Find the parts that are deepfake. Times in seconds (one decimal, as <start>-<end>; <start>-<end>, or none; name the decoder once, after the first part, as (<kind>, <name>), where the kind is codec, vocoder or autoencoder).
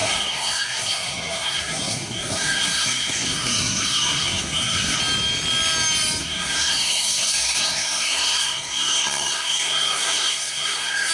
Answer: 0.0-5.0 (codec, SNAC); 6.2-11.1